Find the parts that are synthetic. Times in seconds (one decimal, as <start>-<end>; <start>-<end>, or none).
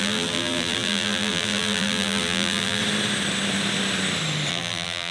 0.0-2.8; 4.5-5.1